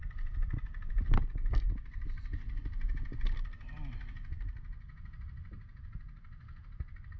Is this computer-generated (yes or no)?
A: no